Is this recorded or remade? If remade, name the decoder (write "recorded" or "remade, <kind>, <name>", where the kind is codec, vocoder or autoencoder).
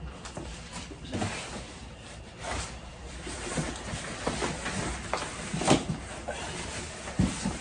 recorded